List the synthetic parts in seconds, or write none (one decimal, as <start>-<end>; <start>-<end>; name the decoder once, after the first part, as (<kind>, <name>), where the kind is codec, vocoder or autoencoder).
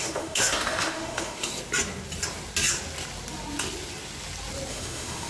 0.0-1.5 (autoencoder, DAC-VAE); 4.7-5.3